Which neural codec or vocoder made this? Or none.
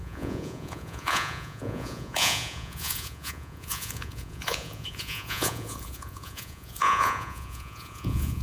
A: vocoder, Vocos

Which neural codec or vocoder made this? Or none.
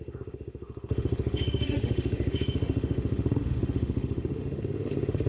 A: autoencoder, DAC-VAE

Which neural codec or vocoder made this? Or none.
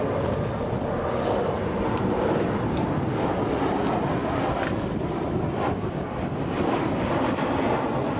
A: none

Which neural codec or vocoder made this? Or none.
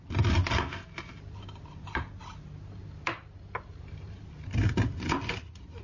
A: none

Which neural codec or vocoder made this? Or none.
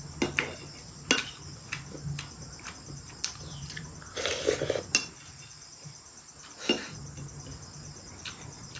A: none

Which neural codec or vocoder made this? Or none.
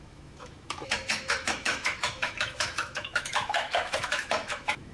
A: autoencoder, DAC-VAE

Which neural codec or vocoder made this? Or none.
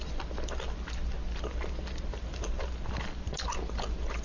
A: none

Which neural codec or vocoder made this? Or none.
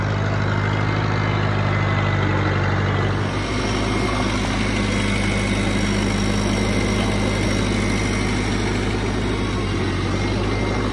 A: none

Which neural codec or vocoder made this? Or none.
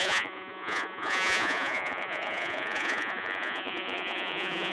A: vocoder, Vocos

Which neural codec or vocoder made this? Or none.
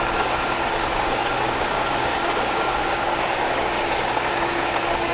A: codec, DAC